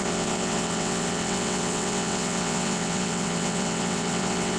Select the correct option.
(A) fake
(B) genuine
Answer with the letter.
A